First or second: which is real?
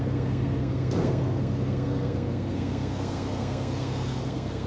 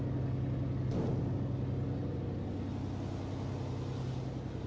second